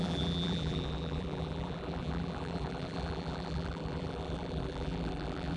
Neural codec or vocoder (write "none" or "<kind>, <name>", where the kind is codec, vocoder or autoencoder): vocoder, BigVGAN v2